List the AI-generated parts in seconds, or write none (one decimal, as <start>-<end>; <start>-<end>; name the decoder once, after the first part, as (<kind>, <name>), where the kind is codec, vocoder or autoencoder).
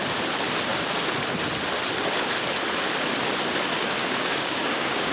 4.0-5.1 (codec, DAC)